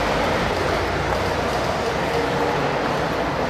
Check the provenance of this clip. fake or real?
real